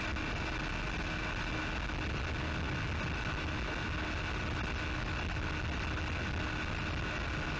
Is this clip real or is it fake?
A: real